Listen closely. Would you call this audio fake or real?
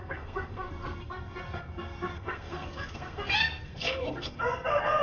fake